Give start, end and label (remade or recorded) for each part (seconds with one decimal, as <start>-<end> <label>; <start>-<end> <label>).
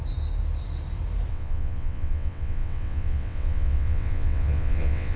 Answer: 0.0-1.3 recorded; 1.3-5.2 remade